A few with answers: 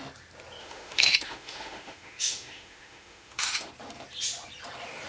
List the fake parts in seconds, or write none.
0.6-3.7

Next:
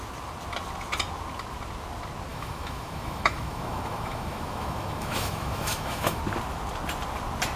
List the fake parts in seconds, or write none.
2.3-6.2

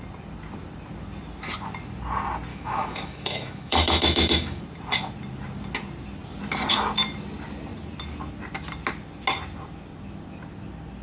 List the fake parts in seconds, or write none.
2.5-4.6